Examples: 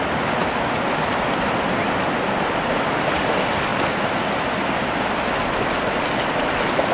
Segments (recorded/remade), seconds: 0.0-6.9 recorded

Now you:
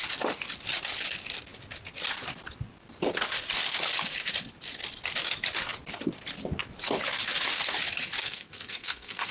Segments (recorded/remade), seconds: 0.0-8.2 recorded; 8.2-9.3 remade

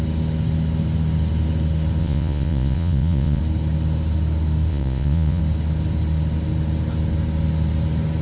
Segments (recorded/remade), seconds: 0.0-2.0 recorded; 2.0-3.4 remade; 3.4-4.7 recorded; 4.7-5.4 remade; 5.4-8.2 recorded

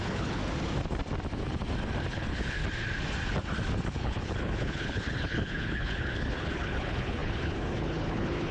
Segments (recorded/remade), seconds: 0.0-0.4 remade; 0.4-2.1 recorded; 2.1-2.6 remade; 2.6-3.9 recorded; 3.9-8.5 remade

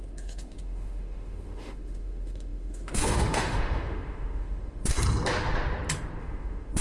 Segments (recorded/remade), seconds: 0.0-4.9 remade; 4.9-6.2 recorded; 6.2-6.8 remade

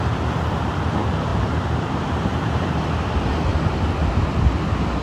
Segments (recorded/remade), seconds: 0.0-1.3 recorded; 1.3-2.8 remade; 2.8-5.0 recorded

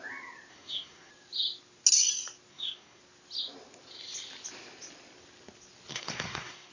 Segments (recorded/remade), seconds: 0.0-0.5 recorded; 0.5-1.1 remade; 1.1-2.5 recorded; 2.5-3.0 remade; 3.0-5.9 recorded; 5.9-6.7 remade